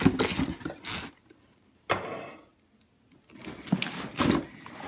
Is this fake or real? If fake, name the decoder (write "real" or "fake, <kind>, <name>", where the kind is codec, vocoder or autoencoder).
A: real